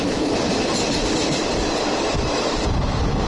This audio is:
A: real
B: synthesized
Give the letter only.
A